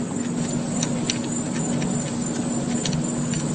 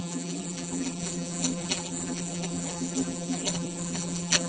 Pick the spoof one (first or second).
second